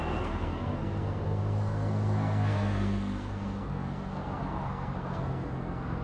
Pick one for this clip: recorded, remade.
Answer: remade